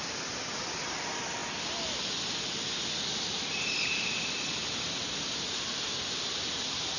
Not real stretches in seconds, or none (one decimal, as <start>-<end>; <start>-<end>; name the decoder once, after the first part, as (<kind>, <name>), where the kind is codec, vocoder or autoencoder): 0.0-1.4 (vocoder, BigVGAN v2); 2.9-4.6; 5.8-7.0